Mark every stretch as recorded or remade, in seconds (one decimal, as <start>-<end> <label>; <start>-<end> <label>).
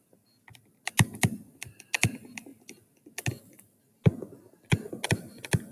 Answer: 0.0-5.7 recorded